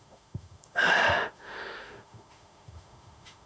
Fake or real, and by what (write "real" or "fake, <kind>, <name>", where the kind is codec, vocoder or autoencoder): fake, autoencoder, DAC-VAE